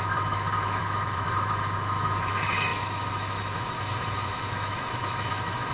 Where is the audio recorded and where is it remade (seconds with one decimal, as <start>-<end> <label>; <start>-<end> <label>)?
0.0-5.7 remade